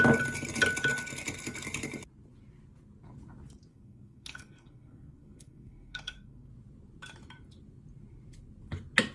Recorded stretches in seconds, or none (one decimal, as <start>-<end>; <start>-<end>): 0.0-3.7; 6.5-9.1